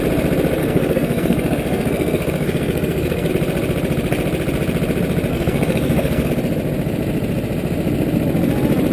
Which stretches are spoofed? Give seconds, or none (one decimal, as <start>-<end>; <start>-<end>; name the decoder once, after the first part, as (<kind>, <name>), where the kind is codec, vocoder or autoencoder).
0.6-3.3 (codec, SNAC); 5.3-6.3